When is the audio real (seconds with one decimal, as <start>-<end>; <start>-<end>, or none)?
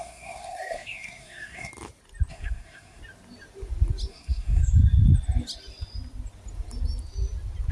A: 1.7-2.3; 3.0-4.1; 4.6-7.7